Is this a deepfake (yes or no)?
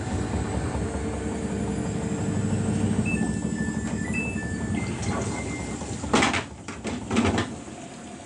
no